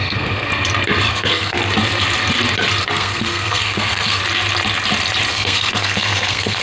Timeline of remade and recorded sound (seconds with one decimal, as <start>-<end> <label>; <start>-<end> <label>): 0.0-0.5 remade; 0.5-1.1 recorded; 1.1-1.6 remade; 1.6-2.8 recorded; 2.8-4.2 remade; 4.2-5.3 recorded; 5.3-6.6 remade